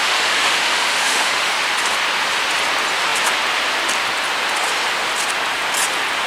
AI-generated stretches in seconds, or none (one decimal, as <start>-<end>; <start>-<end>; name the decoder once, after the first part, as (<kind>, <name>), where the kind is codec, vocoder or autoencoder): 0.0-1.6 (autoencoder, DAC-VAE)